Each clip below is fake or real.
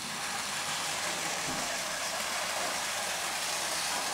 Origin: real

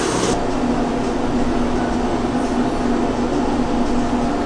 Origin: real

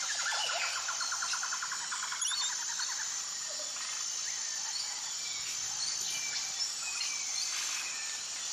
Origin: real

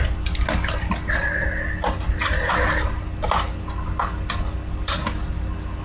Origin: real